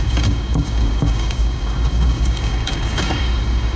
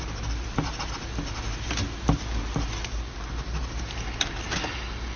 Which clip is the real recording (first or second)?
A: second